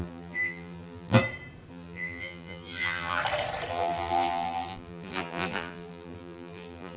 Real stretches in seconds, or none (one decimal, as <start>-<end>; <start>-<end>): 1.2-1.7; 3.2-3.7